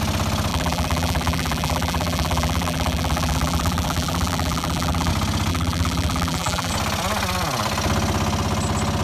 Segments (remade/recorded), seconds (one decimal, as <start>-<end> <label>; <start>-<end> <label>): 0.0-0.5 recorded; 0.5-5.1 remade; 5.1-5.5 recorded; 5.5-6.7 remade; 6.7-9.0 recorded